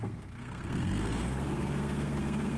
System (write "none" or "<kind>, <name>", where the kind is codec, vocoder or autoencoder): codec, SNAC